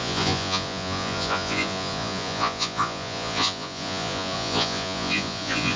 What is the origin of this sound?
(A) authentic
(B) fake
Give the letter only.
B